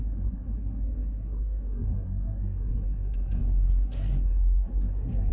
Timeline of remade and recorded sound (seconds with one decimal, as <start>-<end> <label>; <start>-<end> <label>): 0.0-5.3 remade